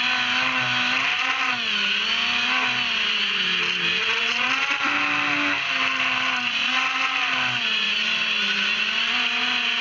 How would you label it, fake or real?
real